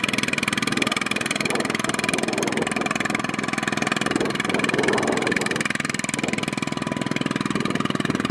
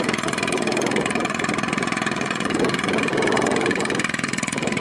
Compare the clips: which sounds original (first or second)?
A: first